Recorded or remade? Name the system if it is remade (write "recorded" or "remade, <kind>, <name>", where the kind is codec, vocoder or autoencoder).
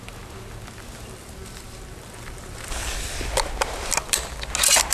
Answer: recorded